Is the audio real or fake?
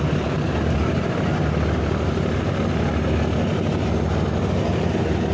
real